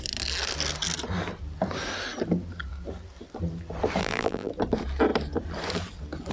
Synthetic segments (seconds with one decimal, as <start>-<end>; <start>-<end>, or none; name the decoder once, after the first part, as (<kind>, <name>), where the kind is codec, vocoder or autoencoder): 4.0-4.5 (vocoder, BigVGAN v2)

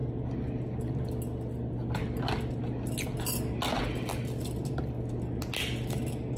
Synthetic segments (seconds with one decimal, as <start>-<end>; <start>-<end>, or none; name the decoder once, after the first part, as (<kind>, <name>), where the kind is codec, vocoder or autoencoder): none